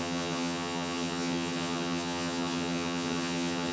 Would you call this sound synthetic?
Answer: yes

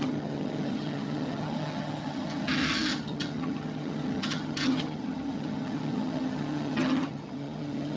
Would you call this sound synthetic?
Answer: yes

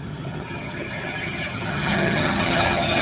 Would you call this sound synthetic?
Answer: yes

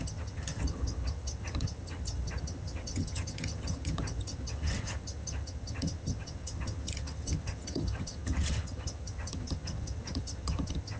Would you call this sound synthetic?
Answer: yes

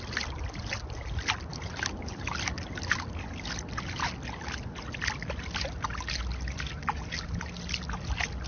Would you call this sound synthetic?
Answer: no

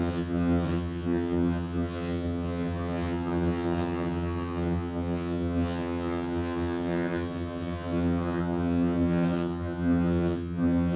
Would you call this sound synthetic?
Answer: yes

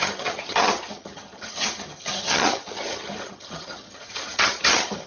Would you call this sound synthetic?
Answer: yes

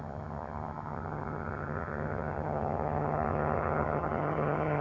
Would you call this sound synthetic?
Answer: yes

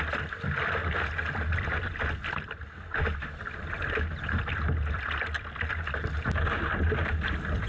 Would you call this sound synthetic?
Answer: no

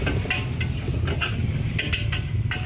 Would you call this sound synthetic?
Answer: no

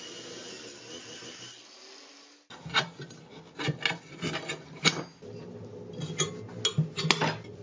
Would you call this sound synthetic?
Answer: no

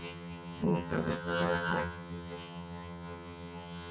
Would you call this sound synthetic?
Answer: yes